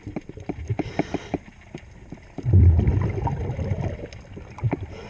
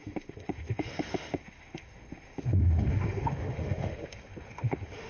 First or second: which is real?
first